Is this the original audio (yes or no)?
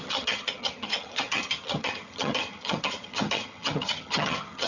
no